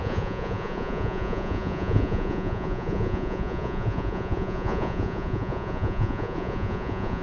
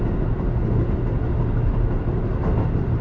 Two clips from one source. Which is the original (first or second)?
second